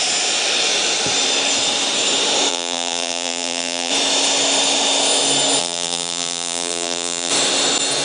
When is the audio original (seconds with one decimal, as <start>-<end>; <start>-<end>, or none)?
0.0-2.5; 3.9-5.6; 7.3-8.0